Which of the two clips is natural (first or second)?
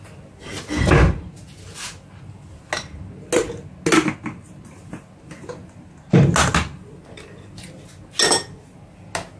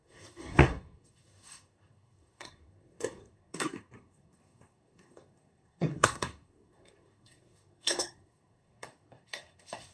first